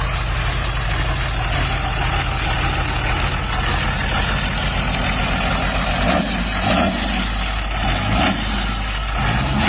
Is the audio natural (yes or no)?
yes